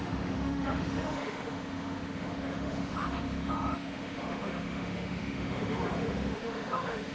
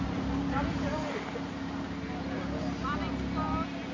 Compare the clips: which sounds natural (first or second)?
second